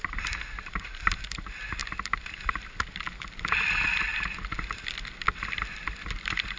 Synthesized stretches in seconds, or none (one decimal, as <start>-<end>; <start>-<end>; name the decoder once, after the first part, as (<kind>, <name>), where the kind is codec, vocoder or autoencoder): none